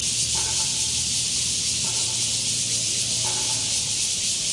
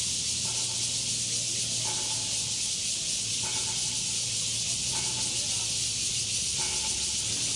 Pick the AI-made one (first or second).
first